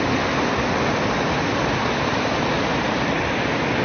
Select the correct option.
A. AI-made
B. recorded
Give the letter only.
B